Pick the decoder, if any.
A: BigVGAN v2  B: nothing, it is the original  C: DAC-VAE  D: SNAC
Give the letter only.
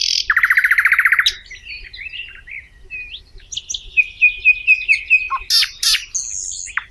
B